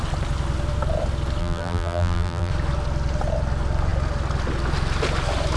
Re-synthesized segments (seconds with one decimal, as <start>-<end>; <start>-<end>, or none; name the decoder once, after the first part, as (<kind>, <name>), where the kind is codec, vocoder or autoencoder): 1.4-2.5 (vocoder, BigVGAN v2)